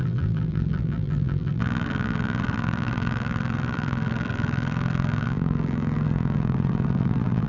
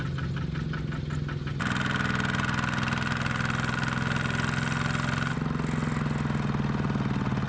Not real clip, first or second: first